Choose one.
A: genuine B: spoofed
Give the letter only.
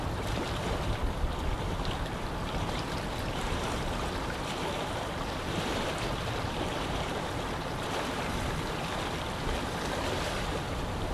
B